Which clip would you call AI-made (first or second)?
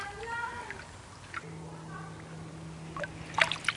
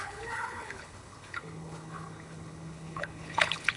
second